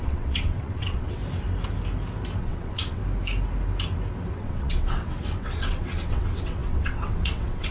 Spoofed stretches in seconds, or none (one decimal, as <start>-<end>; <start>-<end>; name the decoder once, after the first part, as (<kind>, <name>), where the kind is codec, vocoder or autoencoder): 0.0-1.2 (vocoder, WaveNeXt); 2.4-3.0; 4.3-7.7